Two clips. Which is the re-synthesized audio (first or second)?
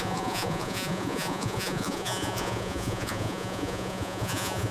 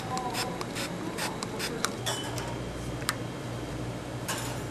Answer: first